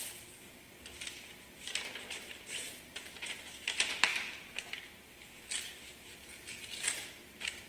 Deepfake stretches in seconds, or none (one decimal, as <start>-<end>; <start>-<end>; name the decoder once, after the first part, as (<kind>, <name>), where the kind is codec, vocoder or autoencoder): none